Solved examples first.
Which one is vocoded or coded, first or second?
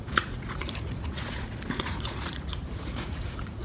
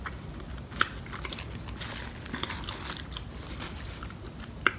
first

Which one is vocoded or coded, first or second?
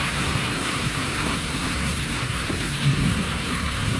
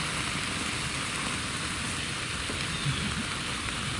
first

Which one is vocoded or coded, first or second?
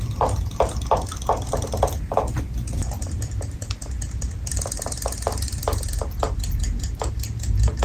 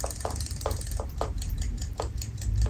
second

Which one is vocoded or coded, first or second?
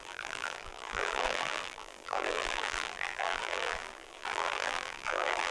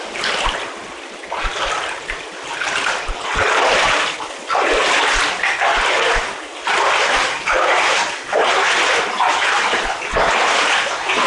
first